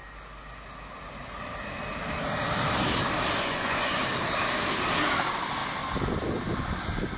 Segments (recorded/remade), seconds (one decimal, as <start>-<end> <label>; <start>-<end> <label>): 0.0-3.4 recorded; 3.4-4.0 remade; 4.0-7.2 recorded